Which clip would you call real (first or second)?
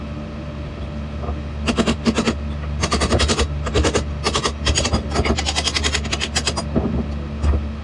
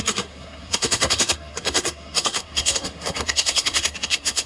first